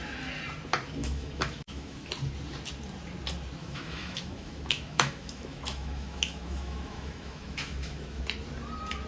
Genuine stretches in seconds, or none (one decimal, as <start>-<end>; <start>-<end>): 0.0-1.0; 2.1-3.6; 8.2-9.1